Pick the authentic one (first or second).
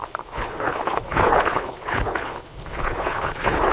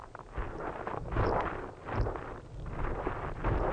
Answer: second